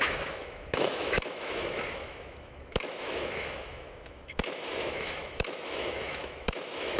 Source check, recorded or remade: remade